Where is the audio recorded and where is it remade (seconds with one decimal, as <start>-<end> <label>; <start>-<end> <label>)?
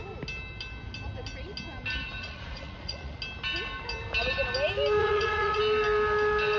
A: 0.0-2.2 recorded; 2.2-3.2 remade; 3.2-5.0 recorded; 5.0-5.6 remade; 5.6-6.6 recorded